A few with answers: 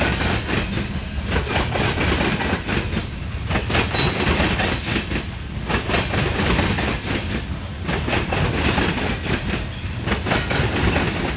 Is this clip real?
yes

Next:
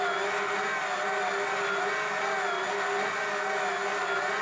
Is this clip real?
yes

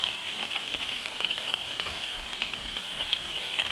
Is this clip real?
no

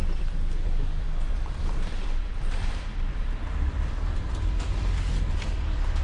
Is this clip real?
no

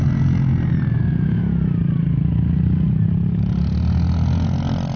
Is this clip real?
yes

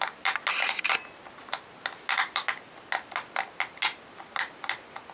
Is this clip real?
yes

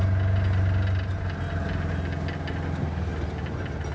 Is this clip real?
yes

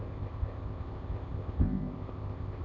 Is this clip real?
no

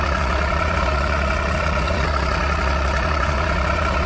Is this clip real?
no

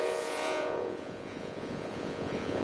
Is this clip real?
no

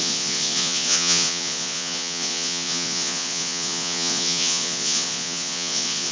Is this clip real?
no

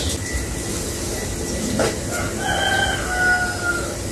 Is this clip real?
yes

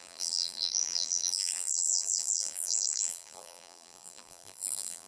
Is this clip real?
no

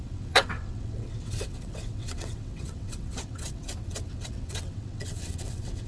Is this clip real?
no